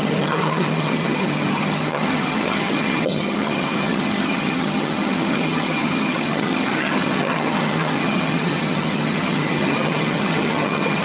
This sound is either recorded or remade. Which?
remade